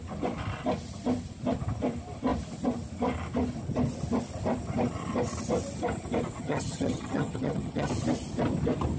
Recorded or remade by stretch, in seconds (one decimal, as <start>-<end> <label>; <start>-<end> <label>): 0.0-6.4 recorded; 6.4-7.9 remade; 7.9-9.0 recorded